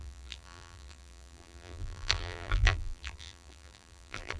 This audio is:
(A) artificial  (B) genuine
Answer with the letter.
A